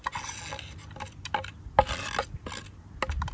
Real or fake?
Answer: real